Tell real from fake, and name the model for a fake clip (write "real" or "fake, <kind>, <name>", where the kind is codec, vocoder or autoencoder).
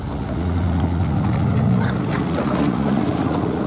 fake, vocoder, Vocos